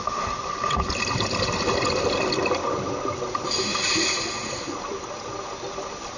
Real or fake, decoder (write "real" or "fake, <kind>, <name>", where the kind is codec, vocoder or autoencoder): real